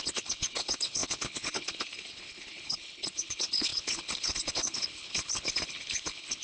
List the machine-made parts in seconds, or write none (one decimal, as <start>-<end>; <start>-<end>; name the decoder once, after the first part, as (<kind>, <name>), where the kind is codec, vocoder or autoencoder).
0.0-6.4 (codec, HILCodec)